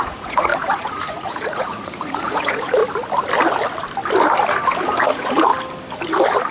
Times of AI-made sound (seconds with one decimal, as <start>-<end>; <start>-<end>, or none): 0.0-2.8; 5.1-5.5